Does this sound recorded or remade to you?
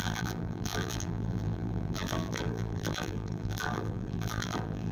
remade